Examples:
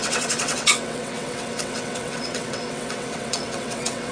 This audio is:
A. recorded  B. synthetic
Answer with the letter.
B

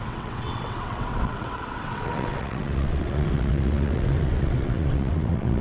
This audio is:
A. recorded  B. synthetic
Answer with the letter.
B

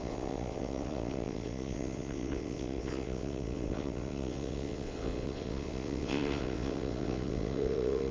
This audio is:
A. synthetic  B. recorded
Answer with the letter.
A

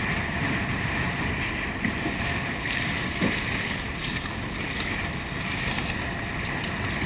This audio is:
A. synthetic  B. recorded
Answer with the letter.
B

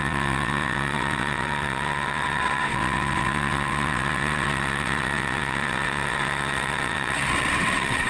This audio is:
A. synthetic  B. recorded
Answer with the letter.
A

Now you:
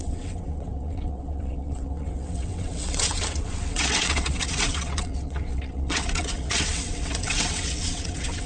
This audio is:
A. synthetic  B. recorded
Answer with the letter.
A